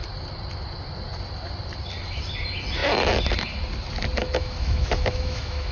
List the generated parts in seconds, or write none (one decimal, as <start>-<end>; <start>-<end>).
4.2-5.7